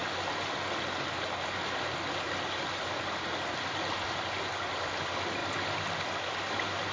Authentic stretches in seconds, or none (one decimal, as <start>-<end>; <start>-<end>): 0.0-6.9